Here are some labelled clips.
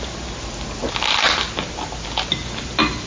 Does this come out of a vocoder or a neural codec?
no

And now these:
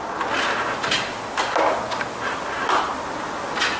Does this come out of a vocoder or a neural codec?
no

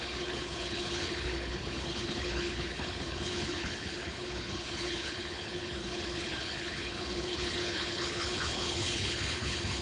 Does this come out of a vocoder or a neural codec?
yes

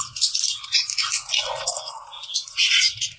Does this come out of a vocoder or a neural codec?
no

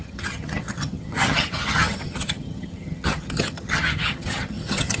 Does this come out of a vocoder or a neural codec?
yes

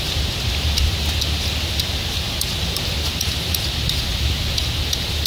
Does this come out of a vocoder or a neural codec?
no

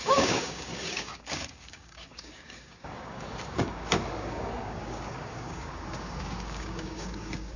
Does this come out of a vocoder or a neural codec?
yes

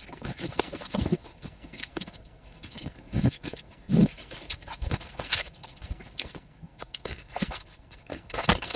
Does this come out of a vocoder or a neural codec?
yes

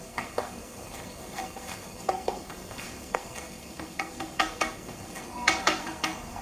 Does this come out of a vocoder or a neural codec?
yes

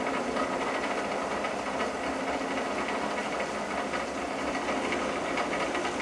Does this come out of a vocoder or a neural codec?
no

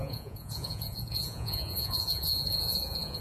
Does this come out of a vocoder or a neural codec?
yes